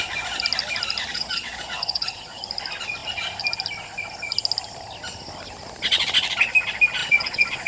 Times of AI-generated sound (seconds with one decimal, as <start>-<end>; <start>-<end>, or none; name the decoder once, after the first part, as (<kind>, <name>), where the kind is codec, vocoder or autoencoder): 1.1-2.4 (vocoder, Vocos); 7.0-7.7